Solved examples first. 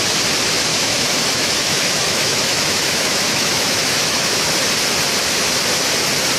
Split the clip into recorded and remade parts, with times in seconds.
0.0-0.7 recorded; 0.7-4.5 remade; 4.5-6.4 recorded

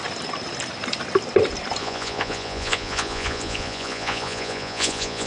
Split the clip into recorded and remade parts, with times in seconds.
0.0-1.8 recorded; 1.8-5.3 remade

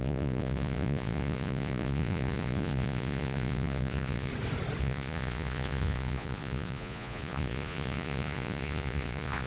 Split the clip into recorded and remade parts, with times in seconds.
0.0-4.3 remade; 4.3-4.8 recorded; 4.8-9.5 remade

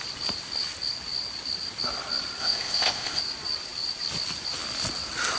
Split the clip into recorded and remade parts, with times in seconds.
0.0-2.4 recorded; 2.4-3.2 remade; 3.2-5.4 recorded

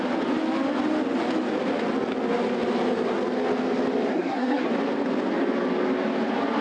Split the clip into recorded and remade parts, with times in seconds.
0.0-4.1 recorded; 4.1-4.7 remade; 4.7-6.6 recorded